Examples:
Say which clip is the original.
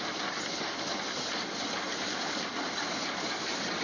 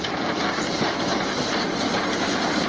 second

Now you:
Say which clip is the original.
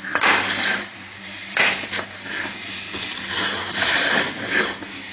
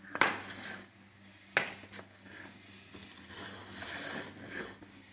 second